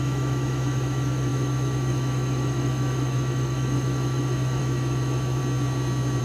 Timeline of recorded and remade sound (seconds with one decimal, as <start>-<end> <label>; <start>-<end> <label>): 0.0-5.4 remade; 5.4-6.2 recorded